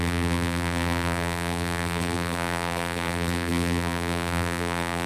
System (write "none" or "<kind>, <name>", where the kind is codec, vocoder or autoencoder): vocoder, BigVGAN v2